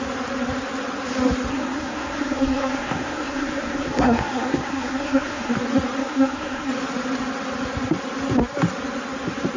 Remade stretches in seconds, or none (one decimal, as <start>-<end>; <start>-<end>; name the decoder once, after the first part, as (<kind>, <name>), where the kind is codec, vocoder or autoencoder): 1.5-5.5 (codec, SNAC); 6.0-6.7